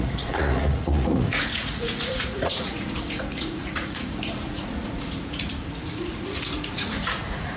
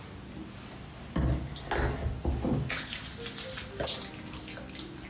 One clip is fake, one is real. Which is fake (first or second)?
first